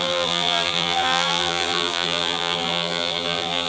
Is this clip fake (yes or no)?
yes